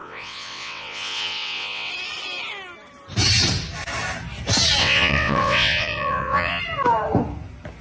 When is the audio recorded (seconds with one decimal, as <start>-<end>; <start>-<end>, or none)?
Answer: 1.9-4.8; 6.6-7.8